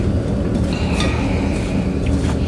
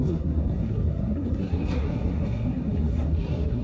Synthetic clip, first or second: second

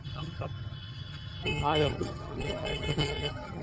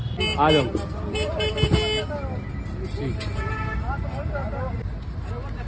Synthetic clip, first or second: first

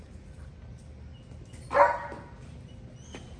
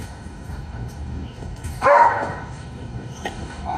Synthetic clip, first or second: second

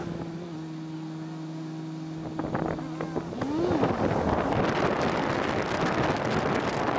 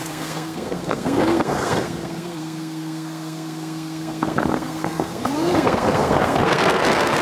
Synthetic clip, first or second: second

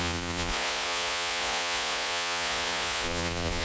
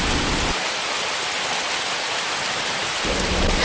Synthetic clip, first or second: first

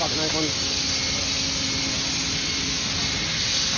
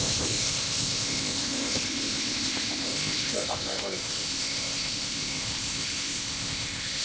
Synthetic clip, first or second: second